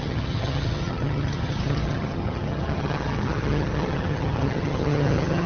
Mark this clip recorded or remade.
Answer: remade